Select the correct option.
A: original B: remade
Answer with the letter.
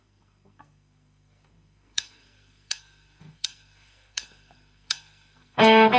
B